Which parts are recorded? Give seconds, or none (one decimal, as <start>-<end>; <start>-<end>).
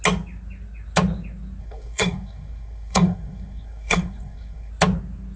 0.0-1.6; 4.7-5.4